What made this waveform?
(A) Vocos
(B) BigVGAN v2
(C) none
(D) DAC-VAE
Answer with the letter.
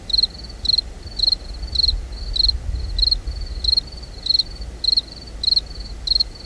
C